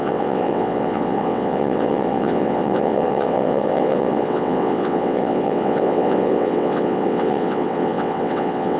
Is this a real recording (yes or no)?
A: no